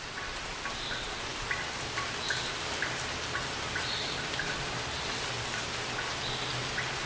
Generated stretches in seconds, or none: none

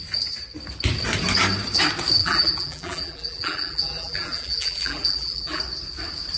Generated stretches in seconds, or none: 2.2-5.6 (vocoder, BigVGAN v2)